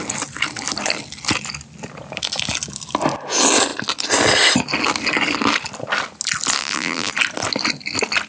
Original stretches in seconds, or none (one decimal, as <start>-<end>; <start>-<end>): 0.0-6.6; 7.1-8.3